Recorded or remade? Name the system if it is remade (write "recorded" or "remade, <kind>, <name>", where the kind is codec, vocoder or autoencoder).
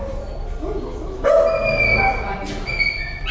recorded